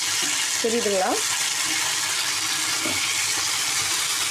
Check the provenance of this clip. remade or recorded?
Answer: recorded